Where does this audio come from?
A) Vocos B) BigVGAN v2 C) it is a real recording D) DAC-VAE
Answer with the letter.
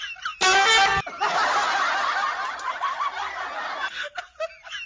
C